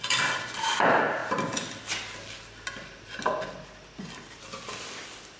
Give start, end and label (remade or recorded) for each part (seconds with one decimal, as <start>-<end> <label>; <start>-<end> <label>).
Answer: 0.0-5.4 recorded